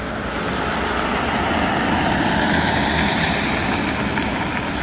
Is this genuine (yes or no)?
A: yes